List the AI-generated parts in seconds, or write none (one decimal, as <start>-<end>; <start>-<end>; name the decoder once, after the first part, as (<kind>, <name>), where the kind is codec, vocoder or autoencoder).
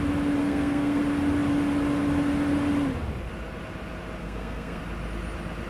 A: 0.4-1.0 (codec, SNAC); 4.2-4.8